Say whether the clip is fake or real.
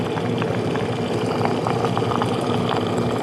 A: real